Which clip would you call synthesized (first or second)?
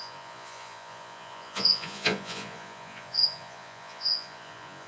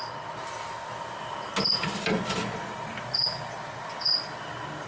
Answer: first